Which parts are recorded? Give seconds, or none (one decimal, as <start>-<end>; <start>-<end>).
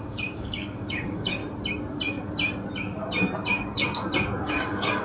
1.4-4.4